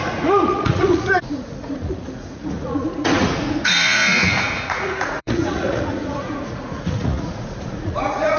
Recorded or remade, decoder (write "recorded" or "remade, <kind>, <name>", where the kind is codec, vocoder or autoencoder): remade, vocoder, Vocos